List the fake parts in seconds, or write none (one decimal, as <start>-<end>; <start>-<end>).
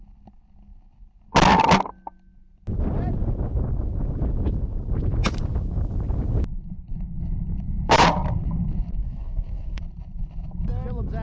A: 9.0-9.8